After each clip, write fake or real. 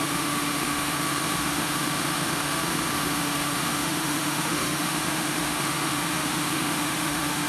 fake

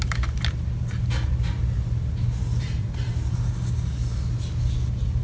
real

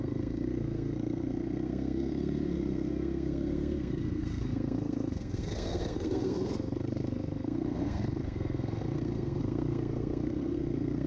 fake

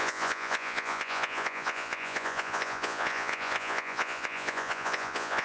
fake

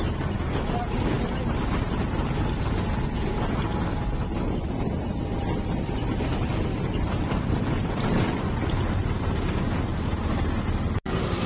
real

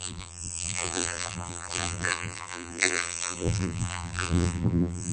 fake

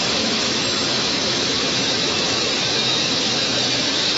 fake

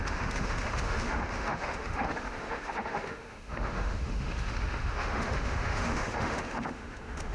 fake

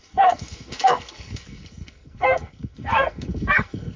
fake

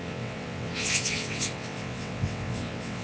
fake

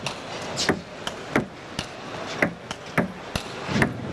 real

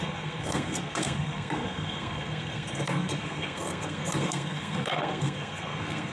fake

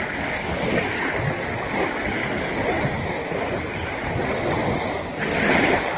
real